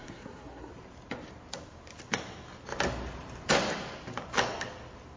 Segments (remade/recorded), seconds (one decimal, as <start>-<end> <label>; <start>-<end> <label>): 0.0-0.7 remade; 0.7-5.2 recorded